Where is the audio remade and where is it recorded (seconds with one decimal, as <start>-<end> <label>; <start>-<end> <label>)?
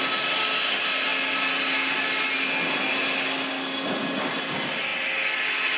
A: 0.0-5.8 recorded